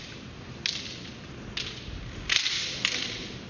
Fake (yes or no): no